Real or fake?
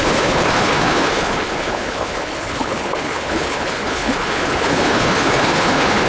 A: fake